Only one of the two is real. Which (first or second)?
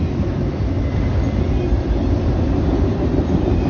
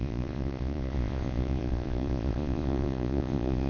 first